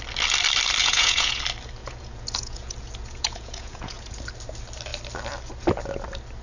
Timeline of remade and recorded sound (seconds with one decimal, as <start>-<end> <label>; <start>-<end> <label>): 0.0-0.8 recorded; 0.8-1.4 remade; 1.4-1.8 recorded; 1.8-4.2 remade; 4.2-6.4 recorded